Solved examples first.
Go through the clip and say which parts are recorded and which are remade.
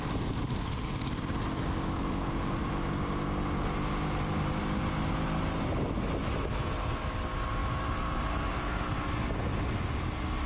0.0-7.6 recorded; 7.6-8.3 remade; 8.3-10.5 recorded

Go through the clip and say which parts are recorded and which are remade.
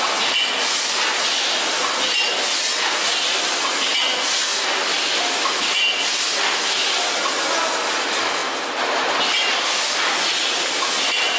0.0-4.5 recorded; 4.5-5.2 remade; 5.2-11.4 recorded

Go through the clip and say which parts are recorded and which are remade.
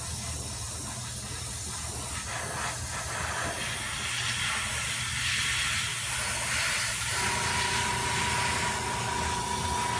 0.0-10.0 recorded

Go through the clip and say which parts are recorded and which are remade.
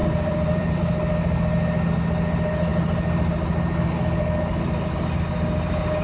0.0-0.8 remade; 0.8-6.0 recorded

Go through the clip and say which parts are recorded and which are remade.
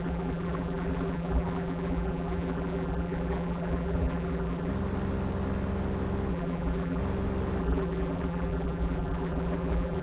0.0-4.7 remade; 4.7-6.3 recorded; 6.3-7.0 remade; 7.0-7.6 recorded; 7.6-10.0 remade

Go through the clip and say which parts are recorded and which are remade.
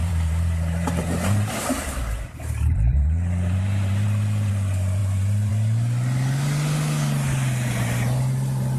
0.0-4.5 remade; 4.5-5.0 recorded; 5.0-5.5 remade; 5.5-8.8 recorded